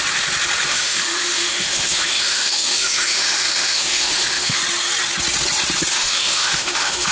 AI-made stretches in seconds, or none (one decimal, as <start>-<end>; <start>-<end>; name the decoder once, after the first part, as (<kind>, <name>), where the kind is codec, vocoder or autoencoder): 0.7-4.6 (autoencoder, DAC-VAE); 5.9-7.1